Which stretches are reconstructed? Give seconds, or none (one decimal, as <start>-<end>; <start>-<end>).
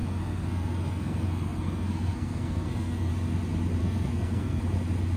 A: 0.0-3.1; 3.8-4.6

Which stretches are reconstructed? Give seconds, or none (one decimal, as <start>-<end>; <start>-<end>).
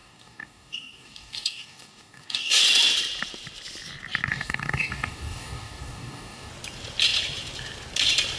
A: 0.0-2.6; 4.3-6.5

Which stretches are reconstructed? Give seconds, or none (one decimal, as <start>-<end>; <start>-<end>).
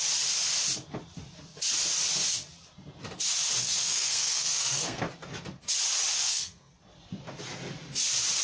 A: 3.6-5.0; 6.1-6.7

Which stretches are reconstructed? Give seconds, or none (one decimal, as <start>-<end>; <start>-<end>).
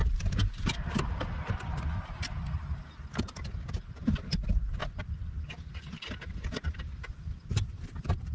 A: none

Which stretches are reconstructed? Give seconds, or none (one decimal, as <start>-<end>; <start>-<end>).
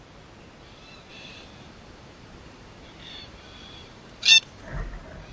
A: 1.1-4.3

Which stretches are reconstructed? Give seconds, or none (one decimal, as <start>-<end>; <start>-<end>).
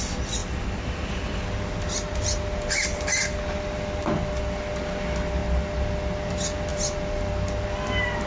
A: 0.4-4.4; 6.7-7.3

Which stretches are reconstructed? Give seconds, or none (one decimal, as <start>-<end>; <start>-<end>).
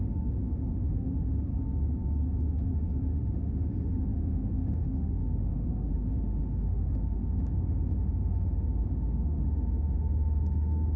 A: 0.0-1.5; 2.4-11.0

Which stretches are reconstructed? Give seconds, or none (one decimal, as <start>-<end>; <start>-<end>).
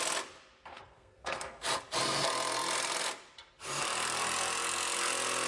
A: 0.7-1.6